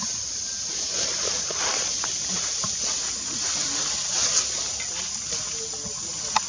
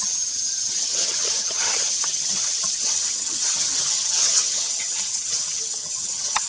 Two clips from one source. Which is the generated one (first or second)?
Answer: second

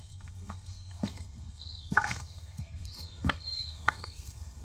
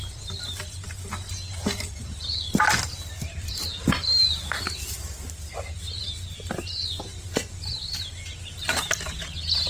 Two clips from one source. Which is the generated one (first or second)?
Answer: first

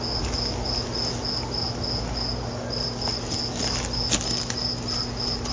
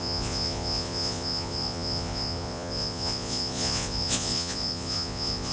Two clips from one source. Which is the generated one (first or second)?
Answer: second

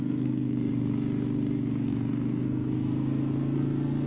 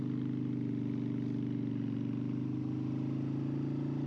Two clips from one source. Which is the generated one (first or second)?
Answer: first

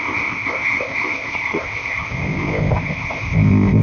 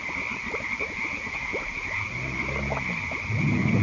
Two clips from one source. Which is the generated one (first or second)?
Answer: first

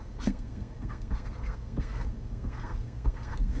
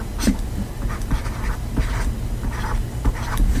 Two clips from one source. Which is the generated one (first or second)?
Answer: first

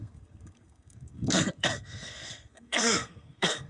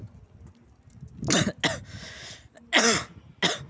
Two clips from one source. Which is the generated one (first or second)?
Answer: first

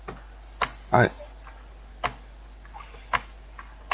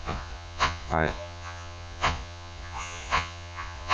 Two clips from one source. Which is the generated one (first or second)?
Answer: second